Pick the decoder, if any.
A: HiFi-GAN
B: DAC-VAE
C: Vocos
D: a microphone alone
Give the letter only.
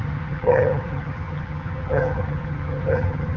A